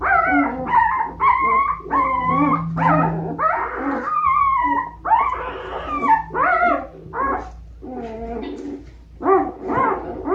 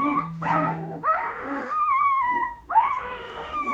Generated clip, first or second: second